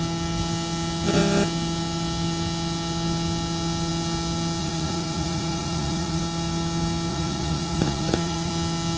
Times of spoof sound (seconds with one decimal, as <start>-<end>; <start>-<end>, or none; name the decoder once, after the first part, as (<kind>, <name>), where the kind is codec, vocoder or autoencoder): 4.6-6.2 (vocoder, Vocos); 7.1-8.5

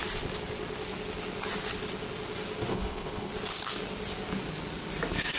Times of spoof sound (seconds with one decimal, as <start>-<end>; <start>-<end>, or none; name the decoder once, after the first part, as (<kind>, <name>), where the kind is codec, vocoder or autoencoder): 2.7-3.3 (codec, HILCodec)

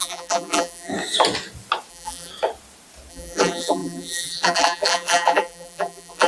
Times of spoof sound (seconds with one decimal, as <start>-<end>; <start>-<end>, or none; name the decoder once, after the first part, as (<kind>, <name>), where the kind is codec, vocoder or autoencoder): 0.0-0.9 (vocoder, BigVGAN v2); 1.9-2.3; 3.1-6.3

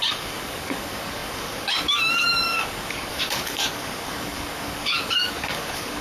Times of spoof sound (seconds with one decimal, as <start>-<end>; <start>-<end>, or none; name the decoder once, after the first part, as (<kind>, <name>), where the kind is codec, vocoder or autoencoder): 0.0-6.0 (codec, DAC)